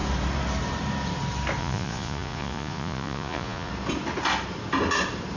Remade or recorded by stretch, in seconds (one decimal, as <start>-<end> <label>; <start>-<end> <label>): 0.0-1.6 recorded; 1.6-3.7 remade; 3.7-5.4 recorded